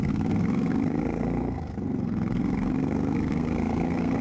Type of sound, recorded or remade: remade